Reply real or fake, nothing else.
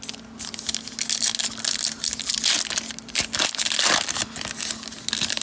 real